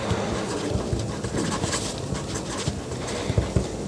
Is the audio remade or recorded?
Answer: recorded